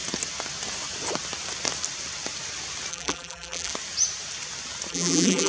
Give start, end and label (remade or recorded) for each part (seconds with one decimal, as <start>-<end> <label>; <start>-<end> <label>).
0.0-2.9 recorded; 2.9-3.7 remade; 3.7-4.9 recorded; 4.9-5.5 remade